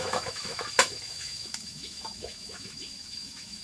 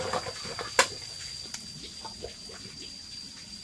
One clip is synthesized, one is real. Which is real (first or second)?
second